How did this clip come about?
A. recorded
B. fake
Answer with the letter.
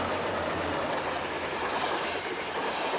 B